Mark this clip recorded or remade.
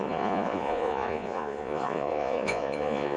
remade